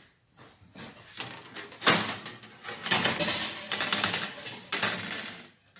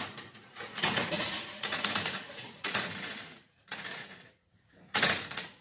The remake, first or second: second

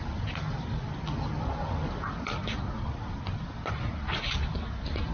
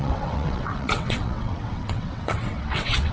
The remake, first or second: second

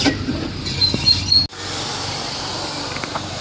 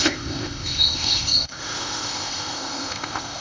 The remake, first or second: second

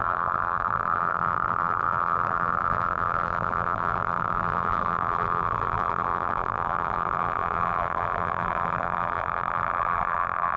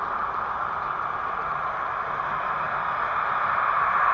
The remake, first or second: first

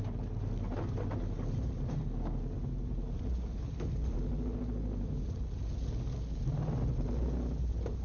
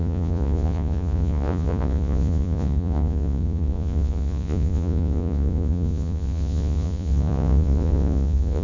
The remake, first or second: second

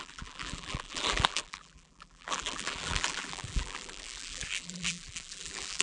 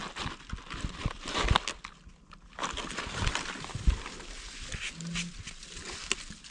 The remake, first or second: first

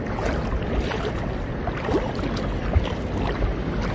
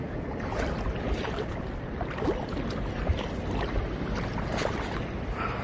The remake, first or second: second